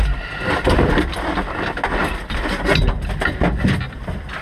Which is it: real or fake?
real